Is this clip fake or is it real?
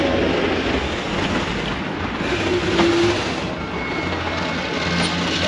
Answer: real